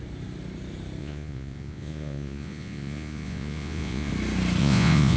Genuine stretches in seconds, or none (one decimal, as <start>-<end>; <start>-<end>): 0.0-1.0; 4.1-4.6

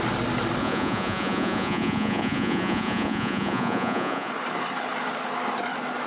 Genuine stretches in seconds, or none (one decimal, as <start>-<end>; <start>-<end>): 0.0-0.6; 4.3-6.1

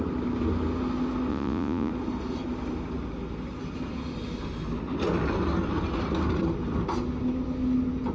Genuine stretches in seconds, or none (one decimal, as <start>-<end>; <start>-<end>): 0.0-1.3; 1.9-8.1